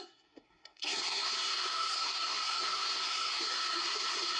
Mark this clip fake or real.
fake